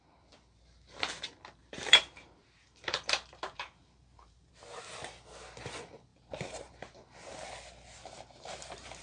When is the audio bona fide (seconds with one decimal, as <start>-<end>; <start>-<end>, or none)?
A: 0.0-1.6; 4.5-6.1; 6.9-8.0